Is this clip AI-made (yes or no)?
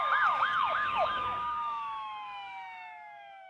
yes